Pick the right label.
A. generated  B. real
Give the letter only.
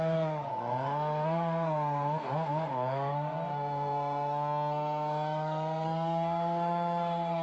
A